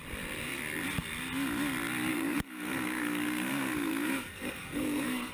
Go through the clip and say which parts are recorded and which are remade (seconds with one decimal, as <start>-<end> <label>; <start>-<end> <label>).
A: 0.0-2.1 recorded; 2.1-5.3 remade

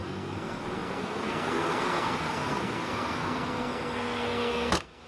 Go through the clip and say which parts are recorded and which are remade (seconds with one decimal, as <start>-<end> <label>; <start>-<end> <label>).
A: 0.0-5.1 remade

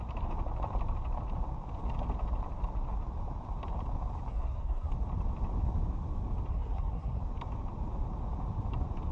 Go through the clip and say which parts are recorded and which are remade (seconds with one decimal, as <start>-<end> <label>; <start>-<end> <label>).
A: 0.0-4.3 recorded; 4.3-4.9 remade; 4.9-6.5 recorded; 6.5-7.2 remade; 7.2-9.1 recorded

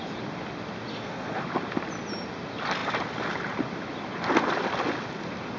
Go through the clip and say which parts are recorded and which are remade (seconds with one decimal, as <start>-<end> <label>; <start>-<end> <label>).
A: 0.0-0.9 recorded; 0.9-1.4 remade; 1.4-5.6 recorded

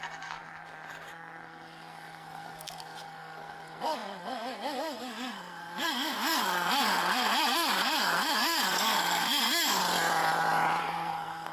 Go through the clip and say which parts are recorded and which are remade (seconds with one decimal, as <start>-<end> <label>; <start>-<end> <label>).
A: 0.0-9.8 remade; 9.8-10.8 recorded; 10.8-11.5 remade

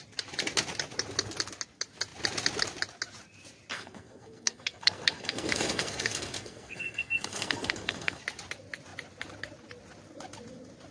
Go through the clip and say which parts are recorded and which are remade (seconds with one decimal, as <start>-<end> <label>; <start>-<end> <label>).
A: 0.0-3.7 recorded; 3.7-8.2 remade; 8.2-10.9 recorded

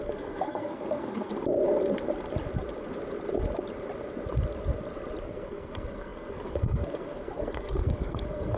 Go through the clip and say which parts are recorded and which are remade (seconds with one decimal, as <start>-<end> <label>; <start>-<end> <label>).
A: 0.0-1.3 remade; 1.3-5.2 recorded; 5.2-8.6 remade